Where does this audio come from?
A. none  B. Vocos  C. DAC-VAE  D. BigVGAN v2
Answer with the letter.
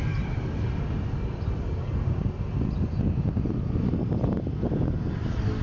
A